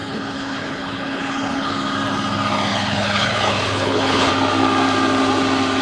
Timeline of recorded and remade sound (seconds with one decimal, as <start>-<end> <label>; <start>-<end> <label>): 0.0-1.7 remade; 1.7-2.7 recorded; 2.7-4.3 remade; 4.3-5.8 recorded